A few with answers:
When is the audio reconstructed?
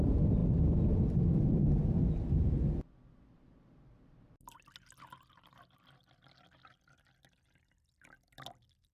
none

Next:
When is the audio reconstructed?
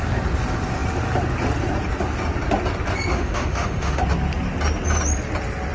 3.1-4.0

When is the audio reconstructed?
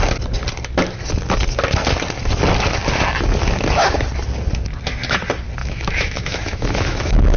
5.6-7.4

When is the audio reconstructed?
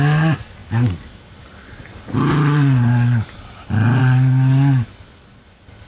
none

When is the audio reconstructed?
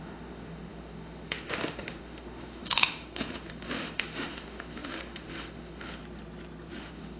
0.0-6.0; 6.7-7.2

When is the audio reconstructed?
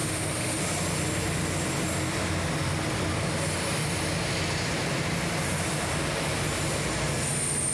0.0-0.6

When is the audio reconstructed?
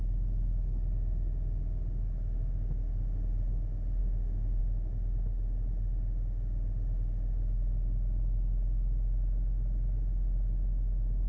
4.0-4.6